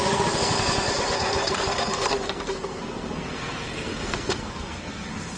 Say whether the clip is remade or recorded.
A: remade